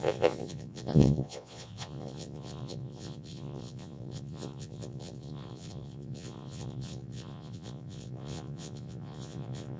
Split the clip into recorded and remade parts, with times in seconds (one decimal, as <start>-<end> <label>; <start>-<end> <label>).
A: 0.0-9.8 remade